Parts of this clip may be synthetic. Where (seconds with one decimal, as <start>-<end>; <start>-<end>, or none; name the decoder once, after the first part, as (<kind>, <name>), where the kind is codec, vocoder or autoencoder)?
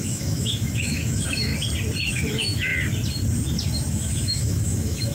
0.0-1.5 (autoencoder, DAC-VAE); 2.1-2.7; 3.9-5.1